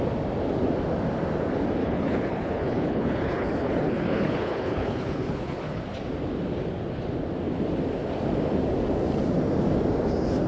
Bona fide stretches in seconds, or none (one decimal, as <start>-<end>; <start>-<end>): 0.0-1.8; 5.8-10.5